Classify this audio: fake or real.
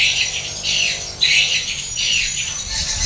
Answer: real